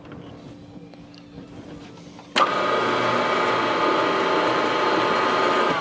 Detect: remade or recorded recorded